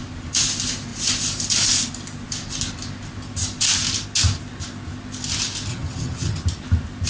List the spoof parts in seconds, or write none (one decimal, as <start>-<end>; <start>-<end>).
5.7-6.4